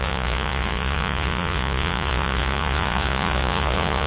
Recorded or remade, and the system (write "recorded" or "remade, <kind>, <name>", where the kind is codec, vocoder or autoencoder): remade, vocoder, Vocos